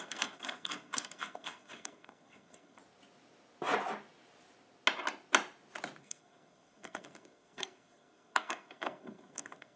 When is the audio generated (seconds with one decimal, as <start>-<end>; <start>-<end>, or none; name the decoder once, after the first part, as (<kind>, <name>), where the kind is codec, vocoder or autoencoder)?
0.0-2.8 (codec, SNAC); 6.0-9.8